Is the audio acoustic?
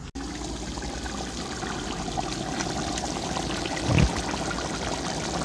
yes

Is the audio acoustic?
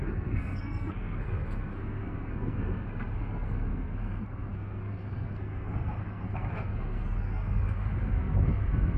no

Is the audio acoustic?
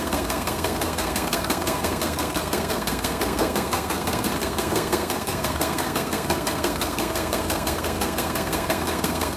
no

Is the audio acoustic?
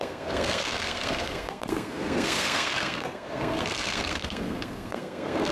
no